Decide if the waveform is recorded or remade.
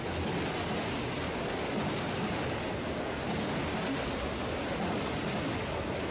recorded